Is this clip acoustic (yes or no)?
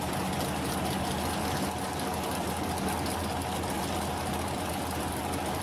yes